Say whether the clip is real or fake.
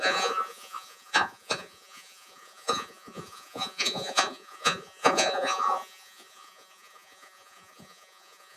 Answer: fake